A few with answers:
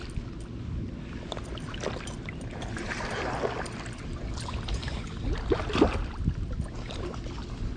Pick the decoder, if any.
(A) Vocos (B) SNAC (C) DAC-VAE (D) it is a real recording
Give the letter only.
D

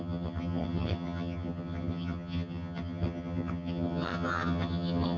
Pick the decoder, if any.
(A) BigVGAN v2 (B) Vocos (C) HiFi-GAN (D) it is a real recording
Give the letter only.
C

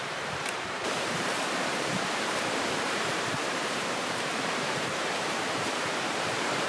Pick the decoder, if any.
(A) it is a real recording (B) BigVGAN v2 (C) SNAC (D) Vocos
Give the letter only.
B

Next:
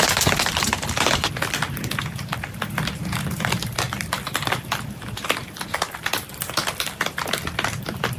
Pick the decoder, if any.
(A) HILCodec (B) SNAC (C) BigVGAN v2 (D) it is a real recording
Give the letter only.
C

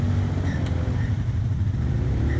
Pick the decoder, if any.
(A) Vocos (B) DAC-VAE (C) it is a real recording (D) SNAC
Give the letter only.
C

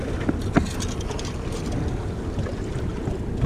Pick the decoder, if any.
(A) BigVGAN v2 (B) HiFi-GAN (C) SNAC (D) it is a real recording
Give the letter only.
D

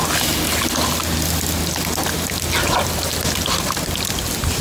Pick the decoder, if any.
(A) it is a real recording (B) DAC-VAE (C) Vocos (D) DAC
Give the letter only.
A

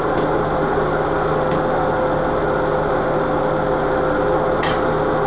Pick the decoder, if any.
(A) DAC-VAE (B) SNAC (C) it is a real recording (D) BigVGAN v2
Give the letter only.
C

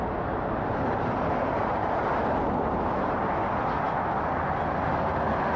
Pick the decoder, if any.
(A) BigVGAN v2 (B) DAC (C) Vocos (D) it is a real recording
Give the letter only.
D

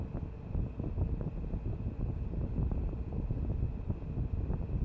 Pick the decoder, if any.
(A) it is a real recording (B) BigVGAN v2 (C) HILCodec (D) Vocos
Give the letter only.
A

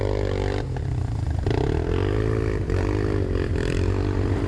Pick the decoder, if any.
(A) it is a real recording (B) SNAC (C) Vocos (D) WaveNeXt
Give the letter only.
A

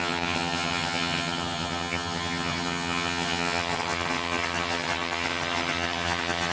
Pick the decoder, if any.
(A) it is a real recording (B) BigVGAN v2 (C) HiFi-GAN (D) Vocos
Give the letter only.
C